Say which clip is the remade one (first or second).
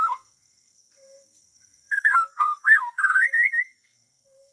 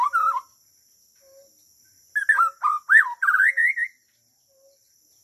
first